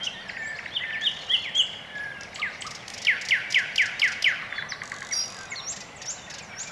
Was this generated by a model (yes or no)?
no